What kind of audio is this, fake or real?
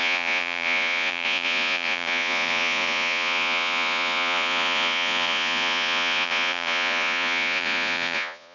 fake